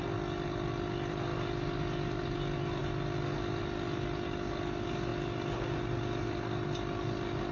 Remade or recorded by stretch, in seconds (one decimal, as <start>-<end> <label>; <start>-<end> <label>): 0.0-7.5 recorded